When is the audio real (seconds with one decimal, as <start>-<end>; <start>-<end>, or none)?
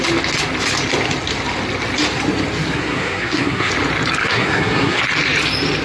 0.0-2.7; 3.7-4.2; 5.0-5.8